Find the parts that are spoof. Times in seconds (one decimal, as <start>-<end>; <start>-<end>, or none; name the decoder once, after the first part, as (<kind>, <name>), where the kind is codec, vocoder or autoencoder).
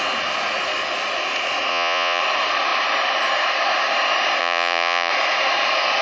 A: 1.7-2.2 (vocoder, Vocos); 4.4-5.1